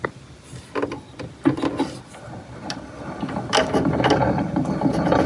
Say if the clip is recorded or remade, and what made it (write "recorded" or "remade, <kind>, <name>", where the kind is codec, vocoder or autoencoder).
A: recorded